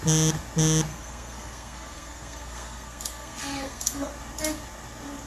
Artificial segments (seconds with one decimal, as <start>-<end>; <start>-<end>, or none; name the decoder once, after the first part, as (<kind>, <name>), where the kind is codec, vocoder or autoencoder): 0.9-4.1 (codec, SNAC)